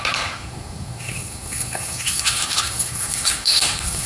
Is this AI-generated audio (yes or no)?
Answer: yes